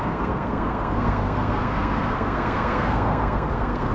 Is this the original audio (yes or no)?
no